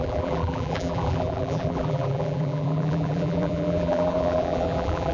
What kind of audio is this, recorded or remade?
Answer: remade